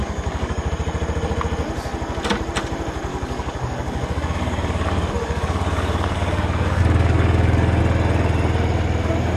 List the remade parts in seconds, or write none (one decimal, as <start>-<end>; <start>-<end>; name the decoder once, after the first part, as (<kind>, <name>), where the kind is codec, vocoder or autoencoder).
0.0-0.7 (codec, DAC); 3.1-7.8